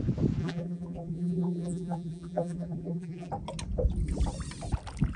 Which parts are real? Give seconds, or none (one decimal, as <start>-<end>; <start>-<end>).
0.0-0.4; 3.3-5.2